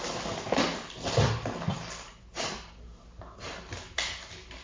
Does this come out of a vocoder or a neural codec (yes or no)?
no